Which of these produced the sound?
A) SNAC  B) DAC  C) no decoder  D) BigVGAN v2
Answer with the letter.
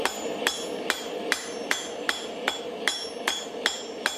C